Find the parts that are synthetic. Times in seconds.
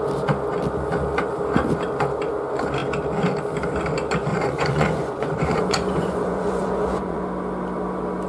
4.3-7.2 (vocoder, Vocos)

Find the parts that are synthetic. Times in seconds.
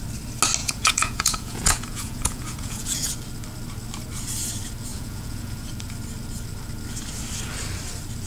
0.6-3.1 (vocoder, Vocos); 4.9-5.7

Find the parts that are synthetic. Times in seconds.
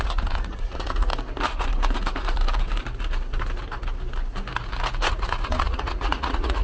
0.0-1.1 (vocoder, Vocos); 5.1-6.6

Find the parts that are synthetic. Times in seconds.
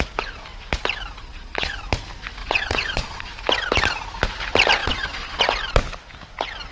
1.2-1.8 (vocoder, Vocos); 2.4-3.3; 4.8-5.4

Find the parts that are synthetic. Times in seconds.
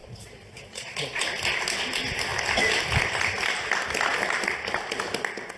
0.0-1.2 (vocoder, Vocos)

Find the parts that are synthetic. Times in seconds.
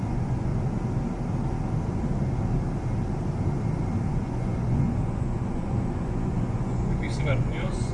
0.0-0.5 (vocoder, Vocos); 4.1-7.9